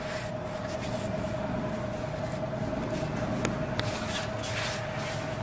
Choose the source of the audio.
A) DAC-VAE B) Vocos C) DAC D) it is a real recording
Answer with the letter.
D